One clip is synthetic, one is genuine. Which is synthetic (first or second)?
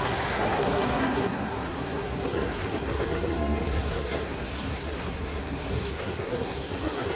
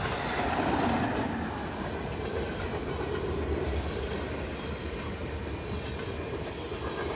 first